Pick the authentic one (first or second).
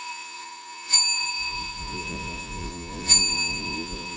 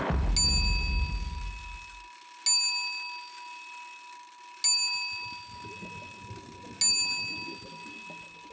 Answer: second